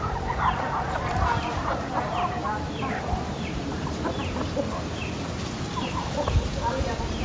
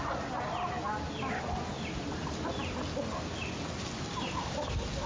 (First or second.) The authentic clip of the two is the second